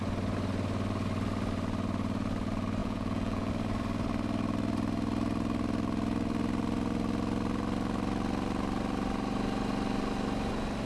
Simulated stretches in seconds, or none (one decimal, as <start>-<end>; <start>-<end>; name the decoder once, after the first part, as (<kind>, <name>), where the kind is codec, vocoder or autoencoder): 2.8-3.5 (vocoder, Vocos)

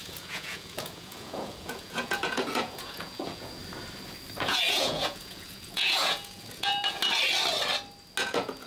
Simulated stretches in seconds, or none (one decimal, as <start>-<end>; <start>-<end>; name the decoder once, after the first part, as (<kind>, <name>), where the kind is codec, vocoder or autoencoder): 0.0-3.6 (vocoder, Vocos); 4.4-7.0; 8.2-8.7